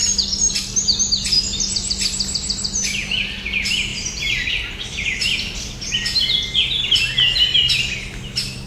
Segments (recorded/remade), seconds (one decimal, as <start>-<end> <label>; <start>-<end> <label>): 0.0-0.5 remade; 0.5-3.9 recorded; 3.9-4.5 remade; 4.5-8.7 recorded